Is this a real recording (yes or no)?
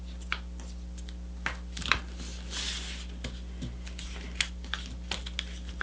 yes